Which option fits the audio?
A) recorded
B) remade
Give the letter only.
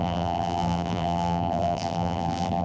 B